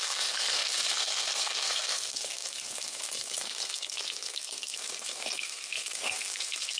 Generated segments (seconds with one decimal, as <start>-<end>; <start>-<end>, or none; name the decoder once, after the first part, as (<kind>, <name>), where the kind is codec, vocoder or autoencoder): 0.0-6.8 (codec, SNAC)